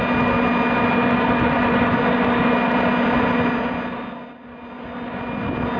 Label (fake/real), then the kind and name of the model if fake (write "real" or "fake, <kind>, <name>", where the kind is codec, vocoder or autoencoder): real